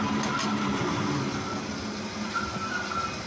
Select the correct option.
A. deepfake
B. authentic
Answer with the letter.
B